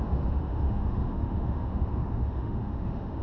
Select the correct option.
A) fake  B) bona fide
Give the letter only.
A